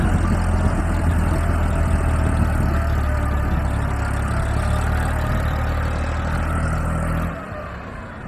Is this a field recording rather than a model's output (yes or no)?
yes